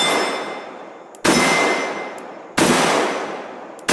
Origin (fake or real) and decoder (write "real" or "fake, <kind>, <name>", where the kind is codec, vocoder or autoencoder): real